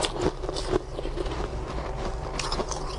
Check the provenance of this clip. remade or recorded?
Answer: recorded